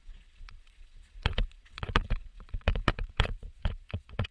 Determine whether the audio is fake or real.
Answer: fake